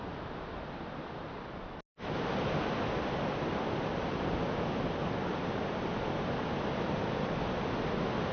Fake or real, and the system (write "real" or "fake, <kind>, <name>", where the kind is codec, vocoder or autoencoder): real